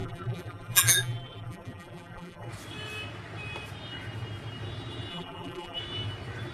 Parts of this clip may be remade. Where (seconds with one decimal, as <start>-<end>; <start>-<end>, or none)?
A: 0.0-2.5; 5.1-5.8